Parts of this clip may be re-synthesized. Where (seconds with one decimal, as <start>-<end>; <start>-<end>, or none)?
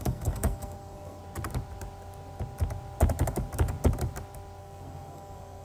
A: 0.0-1.2; 4.6-5.6